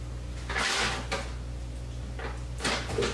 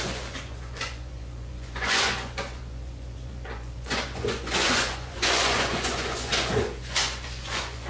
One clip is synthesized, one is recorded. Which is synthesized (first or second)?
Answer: second